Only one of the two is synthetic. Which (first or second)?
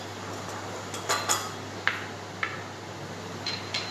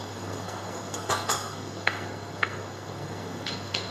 second